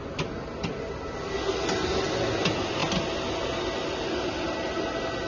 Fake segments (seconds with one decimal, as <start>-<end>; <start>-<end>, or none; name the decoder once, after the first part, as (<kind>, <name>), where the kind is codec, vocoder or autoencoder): none